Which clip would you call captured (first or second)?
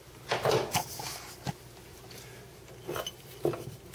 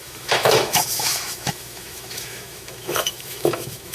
first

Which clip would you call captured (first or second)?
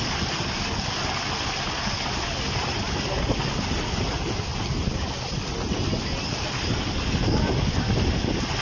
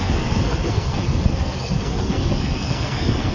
first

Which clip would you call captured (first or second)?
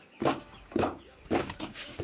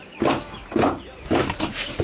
second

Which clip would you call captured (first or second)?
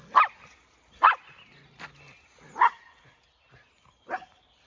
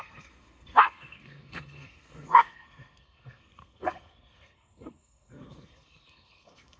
first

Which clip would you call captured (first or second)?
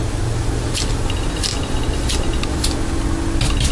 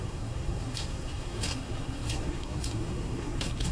first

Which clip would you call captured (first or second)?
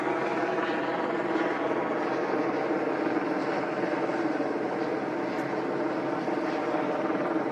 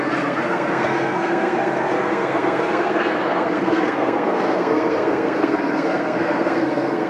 first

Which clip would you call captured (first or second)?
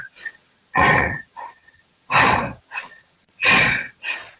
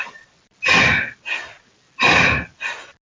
second